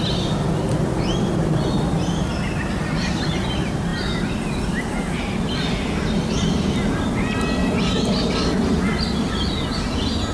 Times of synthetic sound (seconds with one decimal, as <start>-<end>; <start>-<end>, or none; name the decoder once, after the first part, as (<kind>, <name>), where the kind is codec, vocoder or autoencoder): none